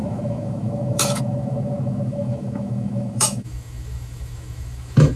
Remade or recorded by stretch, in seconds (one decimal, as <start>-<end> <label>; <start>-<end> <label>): 0.0-5.2 remade